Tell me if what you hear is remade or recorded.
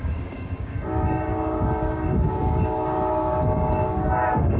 remade